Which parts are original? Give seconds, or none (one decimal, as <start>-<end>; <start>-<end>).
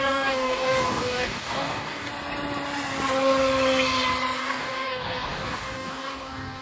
2.1-4.4